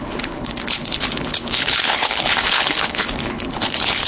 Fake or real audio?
fake